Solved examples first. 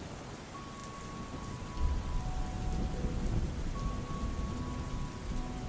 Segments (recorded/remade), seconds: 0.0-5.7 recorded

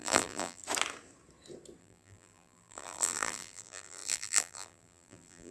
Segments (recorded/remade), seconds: 0.0-0.6 remade; 0.6-1.8 recorded; 1.8-5.5 remade

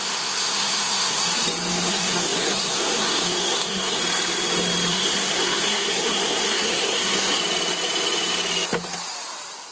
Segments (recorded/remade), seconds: 0.0-1.3 remade; 1.3-1.9 recorded; 1.9-4.0 remade; 4.0-4.9 recorded; 4.9-7.4 remade; 7.4-9.7 recorded

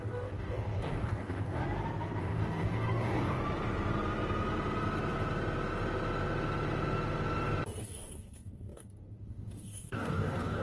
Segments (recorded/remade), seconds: 0.0-1.6 remade; 1.6-2.2 recorded; 2.2-3.4 remade; 3.4-7.8 recorded; 7.8-10.6 remade

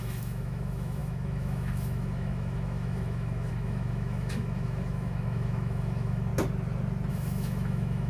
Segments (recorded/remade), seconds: 0.0-6.3 remade; 6.3-7.1 recorded; 7.1-8.1 remade